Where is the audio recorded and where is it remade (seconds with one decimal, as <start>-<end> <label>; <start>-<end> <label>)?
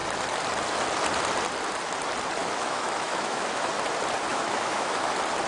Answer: 0.0-2.4 recorded; 2.4-3.7 remade; 3.7-4.3 recorded; 4.3-5.1 remade; 5.1-5.5 recorded